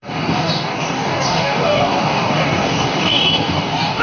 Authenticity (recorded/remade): remade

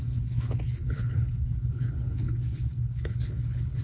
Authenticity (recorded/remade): remade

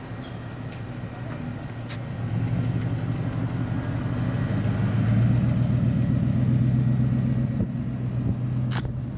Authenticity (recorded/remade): recorded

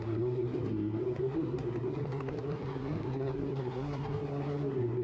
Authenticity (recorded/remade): remade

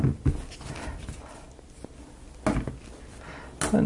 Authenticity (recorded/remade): recorded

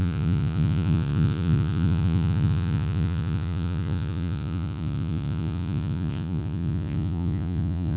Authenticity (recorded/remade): remade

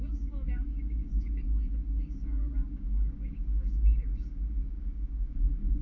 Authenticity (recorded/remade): remade